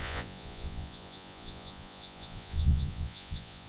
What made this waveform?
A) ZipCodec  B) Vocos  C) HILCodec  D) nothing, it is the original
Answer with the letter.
B